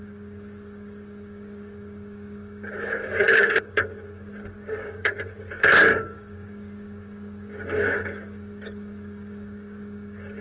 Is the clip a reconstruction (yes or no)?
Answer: yes